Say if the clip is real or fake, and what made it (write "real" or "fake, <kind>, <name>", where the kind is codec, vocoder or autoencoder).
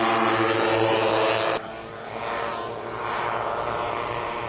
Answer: real